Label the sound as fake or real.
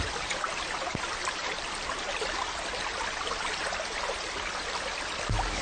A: real